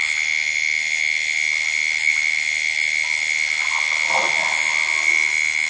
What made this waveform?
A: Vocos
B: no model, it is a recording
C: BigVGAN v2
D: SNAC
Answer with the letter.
B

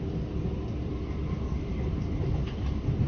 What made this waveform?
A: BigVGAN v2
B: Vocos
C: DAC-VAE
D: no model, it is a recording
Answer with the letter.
D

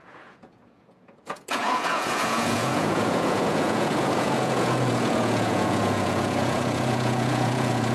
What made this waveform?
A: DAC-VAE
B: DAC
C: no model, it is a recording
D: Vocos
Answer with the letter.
D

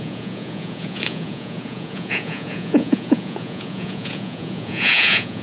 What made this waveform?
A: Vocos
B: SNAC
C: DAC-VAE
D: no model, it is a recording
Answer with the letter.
A